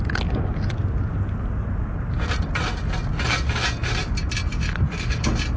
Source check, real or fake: real